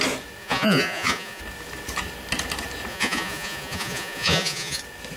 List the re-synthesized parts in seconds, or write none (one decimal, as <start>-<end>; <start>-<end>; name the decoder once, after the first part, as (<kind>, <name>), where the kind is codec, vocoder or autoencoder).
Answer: 0.4-1.4 (vocoder, Vocos); 2.9-4.8